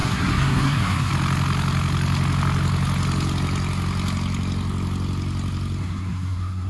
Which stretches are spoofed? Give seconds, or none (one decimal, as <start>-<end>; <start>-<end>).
0.0-1.1; 5.8-6.7